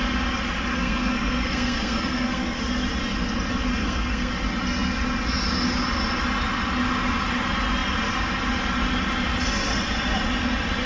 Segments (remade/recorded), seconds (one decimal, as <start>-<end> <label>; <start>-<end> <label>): 0.0-0.7 recorded; 0.7-2.6 remade; 2.6-3.8 recorded; 3.8-4.3 remade; 4.3-10.9 recorded